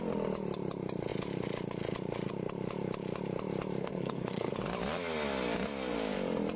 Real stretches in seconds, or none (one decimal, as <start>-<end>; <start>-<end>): 0.0-3.8; 4.5-6.6